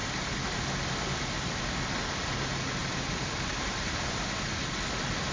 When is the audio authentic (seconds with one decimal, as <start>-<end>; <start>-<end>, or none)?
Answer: 0.7-2.8; 4.1-5.3